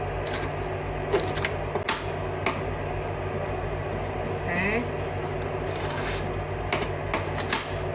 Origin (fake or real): real